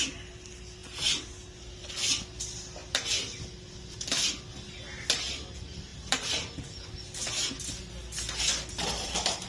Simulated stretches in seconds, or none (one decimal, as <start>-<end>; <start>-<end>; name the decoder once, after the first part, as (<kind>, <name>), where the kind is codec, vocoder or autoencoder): 0.0-0.8 (vocoder, BigVGAN v2); 1.7-2.8; 5.3-9.5